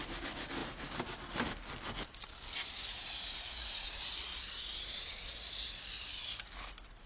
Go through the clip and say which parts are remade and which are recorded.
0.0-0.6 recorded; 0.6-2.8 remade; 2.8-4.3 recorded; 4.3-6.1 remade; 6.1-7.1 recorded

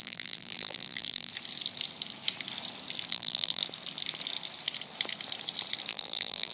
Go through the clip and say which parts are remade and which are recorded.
0.0-1.3 remade; 1.3-3.1 recorded; 3.1-3.6 remade; 3.6-5.9 recorded; 5.9-6.5 remade

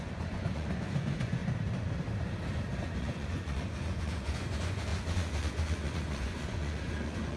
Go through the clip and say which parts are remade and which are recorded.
0.0-1.4 remade; 1.4-2.8 recorded; 2.8-7.4 remade

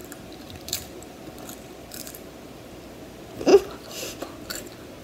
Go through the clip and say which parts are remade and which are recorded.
0.0-2.9 remade; 2.9-5.0 recorded